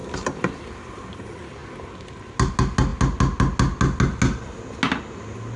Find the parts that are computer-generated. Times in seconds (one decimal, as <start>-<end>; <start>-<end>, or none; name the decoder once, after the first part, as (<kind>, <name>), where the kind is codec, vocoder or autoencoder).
0.0-0.6 (vocoder, BigVGAN v2)